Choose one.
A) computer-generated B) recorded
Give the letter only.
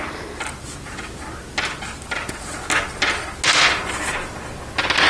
B